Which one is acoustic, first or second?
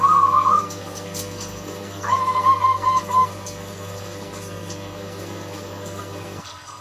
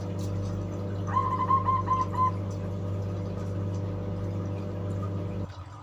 second